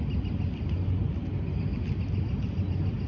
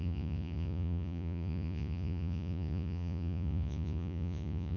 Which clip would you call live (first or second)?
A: first